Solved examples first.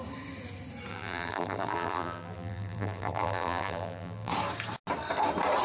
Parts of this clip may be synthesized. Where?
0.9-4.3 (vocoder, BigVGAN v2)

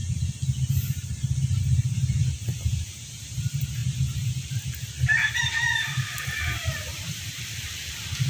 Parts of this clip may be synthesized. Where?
1.6-3.8 (vocoder, BigVGAN v2); 5.3-8.3